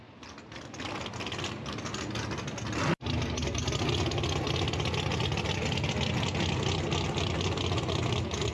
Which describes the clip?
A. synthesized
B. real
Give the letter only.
B